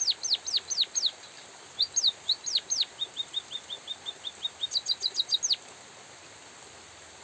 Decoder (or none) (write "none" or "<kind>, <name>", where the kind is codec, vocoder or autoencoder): none